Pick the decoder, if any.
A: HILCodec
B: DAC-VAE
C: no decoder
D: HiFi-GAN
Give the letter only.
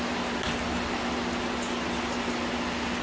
C